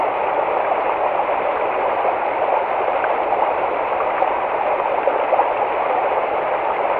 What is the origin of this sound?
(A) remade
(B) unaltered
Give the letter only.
B